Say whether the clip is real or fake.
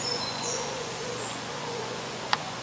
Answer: fake